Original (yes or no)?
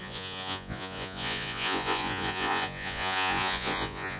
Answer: no